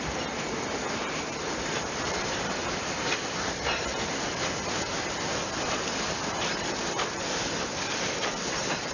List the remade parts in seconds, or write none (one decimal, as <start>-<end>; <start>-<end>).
none

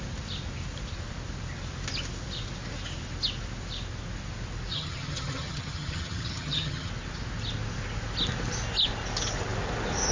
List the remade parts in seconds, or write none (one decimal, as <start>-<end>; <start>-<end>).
4.7-6.9